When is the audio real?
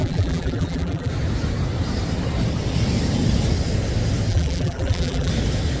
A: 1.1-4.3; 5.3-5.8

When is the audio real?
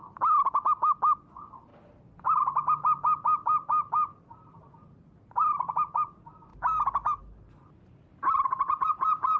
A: 0.0-9.4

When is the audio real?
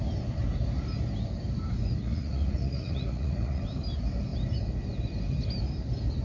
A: 0.0-2.0; 3.6-6.2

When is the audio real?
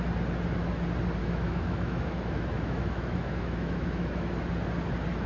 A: 0.0-1.2; 4.4-5.3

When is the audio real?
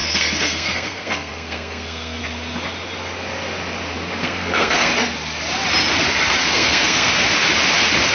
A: 2.2-4.2; 4.9-6.4; 7.1-8.1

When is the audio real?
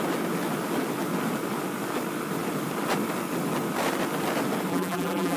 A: 0.0-4.7